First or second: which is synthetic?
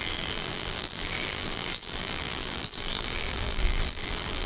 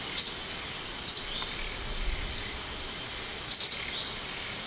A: first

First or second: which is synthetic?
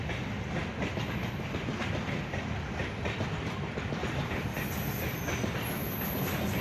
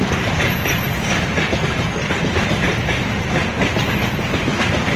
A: second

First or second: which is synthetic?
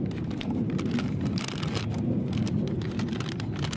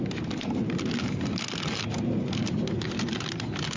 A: first